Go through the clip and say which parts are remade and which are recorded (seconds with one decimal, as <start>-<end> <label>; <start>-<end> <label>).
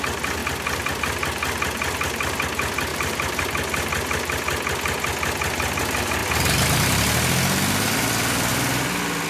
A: 0.0-2.9 recorded; 2.9-3.4 remade; 3.4-9.3 recorded